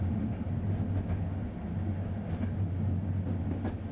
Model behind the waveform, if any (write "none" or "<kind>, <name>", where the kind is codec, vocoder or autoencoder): none